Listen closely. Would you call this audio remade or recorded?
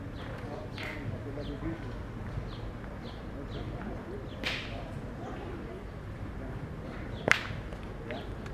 recorded